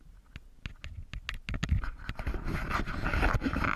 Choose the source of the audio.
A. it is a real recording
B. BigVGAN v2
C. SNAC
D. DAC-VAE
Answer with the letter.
A